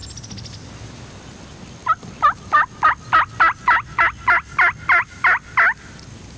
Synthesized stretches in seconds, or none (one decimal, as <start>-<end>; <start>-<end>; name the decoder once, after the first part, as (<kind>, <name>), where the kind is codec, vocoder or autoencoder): none